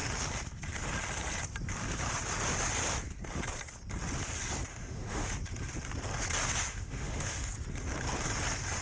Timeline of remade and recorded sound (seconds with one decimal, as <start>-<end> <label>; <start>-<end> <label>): 0.0-4.7 recorded; 4.7-5.3 remade; 5.3-6.7 recorded; 6.7-7.5 remade; 7.5-8.8 recorded